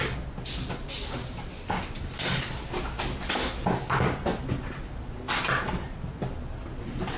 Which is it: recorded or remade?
recorded